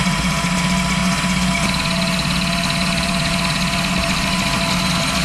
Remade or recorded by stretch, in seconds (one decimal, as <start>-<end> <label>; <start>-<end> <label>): 0.0-0.6 remade; 0.6-5.2 recorded